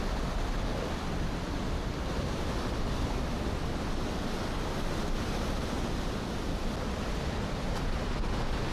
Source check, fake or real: real